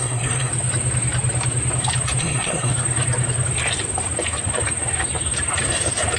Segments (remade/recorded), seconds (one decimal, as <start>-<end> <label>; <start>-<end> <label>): 0.0-0.5 remade; 0.5-2.2 recorded; 2.2-2.7 remade; 2.7-6.2 recorded